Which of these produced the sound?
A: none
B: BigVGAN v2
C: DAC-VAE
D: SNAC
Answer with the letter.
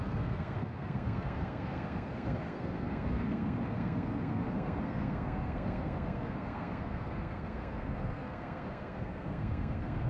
D